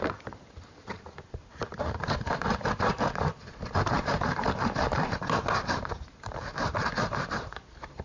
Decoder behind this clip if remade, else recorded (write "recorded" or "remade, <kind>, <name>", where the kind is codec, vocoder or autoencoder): remade, vocoder, BigVGAN v2